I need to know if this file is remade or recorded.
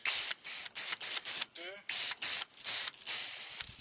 recorded